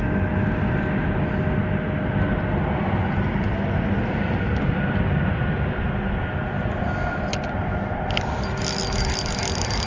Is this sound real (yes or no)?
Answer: yes